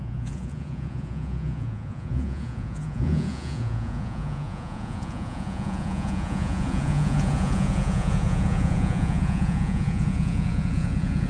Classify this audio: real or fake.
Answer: fake